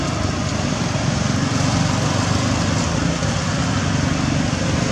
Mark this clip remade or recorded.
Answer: recorded